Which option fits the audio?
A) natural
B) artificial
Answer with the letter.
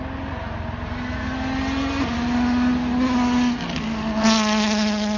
A